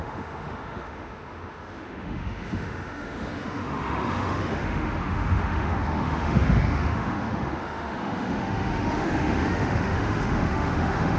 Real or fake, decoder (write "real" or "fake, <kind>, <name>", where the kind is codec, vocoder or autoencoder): fake, autoencoder, DAC-VAE